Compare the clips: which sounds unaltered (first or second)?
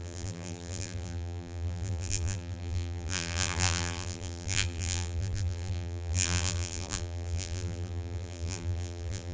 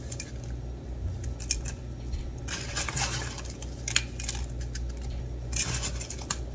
second